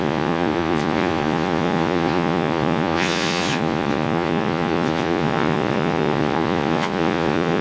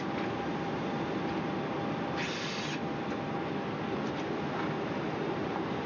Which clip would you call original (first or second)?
second